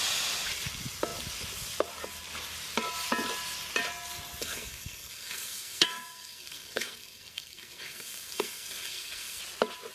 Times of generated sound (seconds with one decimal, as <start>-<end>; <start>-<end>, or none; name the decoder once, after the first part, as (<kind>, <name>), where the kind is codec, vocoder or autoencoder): 4.4-9.4 (codec, SNAC)